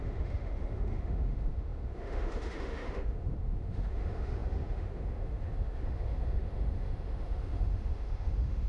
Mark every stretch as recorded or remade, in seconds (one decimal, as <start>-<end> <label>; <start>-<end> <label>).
0.0-8.7 remade